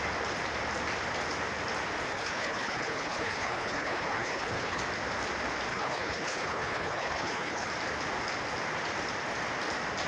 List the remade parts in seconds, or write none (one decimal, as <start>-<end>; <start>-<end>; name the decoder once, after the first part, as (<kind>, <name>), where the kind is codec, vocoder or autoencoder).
2.1-4.8 (codec, HILCodec); 5.7-7.7